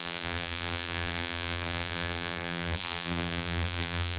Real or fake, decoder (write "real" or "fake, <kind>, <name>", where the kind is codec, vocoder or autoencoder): fake, vocoder, BigVGAN v2